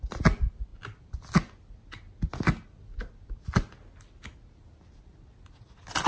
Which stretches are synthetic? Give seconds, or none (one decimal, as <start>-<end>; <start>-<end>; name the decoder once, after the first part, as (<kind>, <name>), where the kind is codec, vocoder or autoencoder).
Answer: none